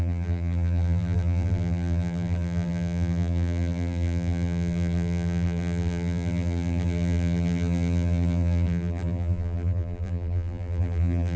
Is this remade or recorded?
remade